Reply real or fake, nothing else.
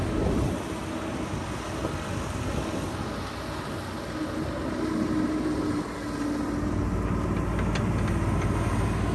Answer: real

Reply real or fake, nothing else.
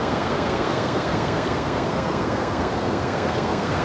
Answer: fake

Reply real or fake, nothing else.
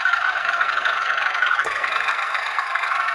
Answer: fake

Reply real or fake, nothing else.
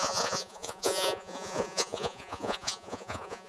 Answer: fake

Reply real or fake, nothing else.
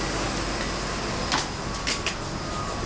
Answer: real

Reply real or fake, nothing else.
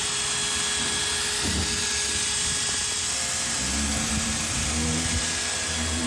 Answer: real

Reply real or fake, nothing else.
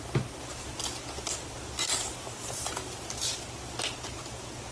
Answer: real